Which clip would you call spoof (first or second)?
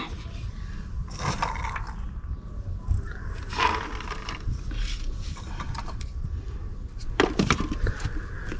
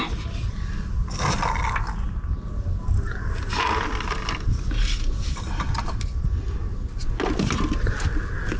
first